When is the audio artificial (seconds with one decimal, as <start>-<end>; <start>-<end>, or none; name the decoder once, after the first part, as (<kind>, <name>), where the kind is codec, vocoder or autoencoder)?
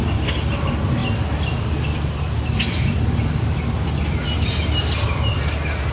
none